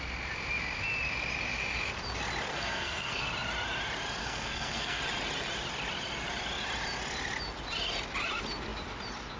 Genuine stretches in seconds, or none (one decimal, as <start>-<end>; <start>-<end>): 0.0-2.5; 3.3-4.2; 5.0-9.4